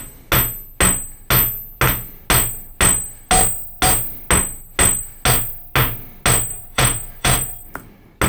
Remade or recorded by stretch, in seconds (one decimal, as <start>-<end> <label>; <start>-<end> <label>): 0.0-6.5 recorded; 6.5-7.7 remade; 7.7-8.3 recorded